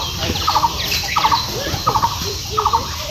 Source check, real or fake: fake